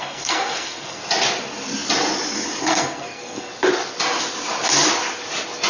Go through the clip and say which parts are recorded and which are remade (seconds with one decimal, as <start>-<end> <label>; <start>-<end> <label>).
0.0-1.0 remade; 1.0-2.6 recorded; 2.6-3.5 remade; 3.5-5.7 recorded